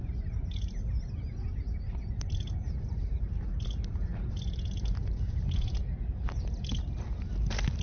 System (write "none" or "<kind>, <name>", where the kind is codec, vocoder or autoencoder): none